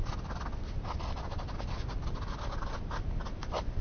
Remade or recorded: recorded